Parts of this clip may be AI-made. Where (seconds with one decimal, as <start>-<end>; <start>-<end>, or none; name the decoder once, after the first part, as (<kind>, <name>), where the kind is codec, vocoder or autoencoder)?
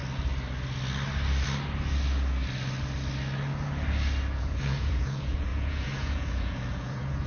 4.4-7.3 (vocoder, Vocos)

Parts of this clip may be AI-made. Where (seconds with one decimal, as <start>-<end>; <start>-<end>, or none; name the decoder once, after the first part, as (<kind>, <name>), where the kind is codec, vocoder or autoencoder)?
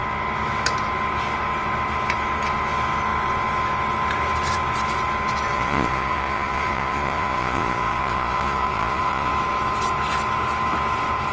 5.5-9.3 (vocoder, Vocos)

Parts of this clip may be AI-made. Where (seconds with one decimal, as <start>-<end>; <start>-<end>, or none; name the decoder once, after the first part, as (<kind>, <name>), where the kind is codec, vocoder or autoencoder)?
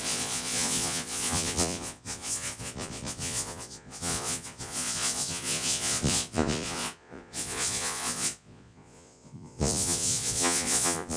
0.0-11.2 (vocoder, Vocos)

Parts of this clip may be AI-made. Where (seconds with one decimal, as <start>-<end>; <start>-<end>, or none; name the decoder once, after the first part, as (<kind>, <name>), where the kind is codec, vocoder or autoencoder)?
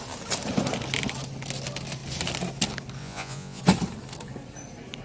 3.0-3.6 (vocoder, Vocos)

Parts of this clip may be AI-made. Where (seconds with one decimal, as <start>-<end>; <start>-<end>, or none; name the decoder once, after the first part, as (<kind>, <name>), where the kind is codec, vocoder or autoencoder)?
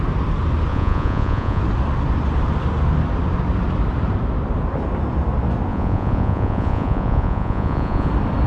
0.7-1.6 (vocoder, Vocos); 5.7-8.1